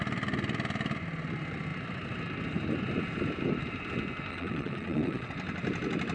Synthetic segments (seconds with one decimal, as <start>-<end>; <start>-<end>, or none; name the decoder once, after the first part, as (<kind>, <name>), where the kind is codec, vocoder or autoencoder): 4.3-5.3 (vocoder, WaveNeXt)